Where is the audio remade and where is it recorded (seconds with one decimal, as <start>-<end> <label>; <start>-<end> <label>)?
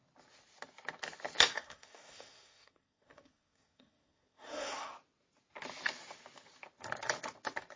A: 0.0-1.5 recorded; 1.5-4.9 remade; 4.9-7.8 recorded